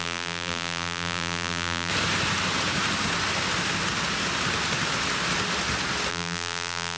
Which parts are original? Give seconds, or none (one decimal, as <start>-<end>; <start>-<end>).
1.9-6.1